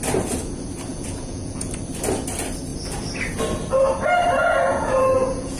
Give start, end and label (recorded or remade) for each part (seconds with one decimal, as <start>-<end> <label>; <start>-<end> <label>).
0.0-0.9 recorded; 0.9-1.7 remade; 1.7-4.4 recorded; 4.4-5.6 remade